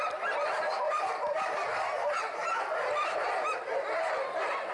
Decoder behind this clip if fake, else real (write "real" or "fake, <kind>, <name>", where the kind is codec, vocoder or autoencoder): real